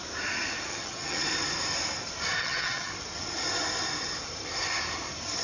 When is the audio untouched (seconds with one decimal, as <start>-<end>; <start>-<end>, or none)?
0.0-0.7; 1.2-2.4; 2.9-5.4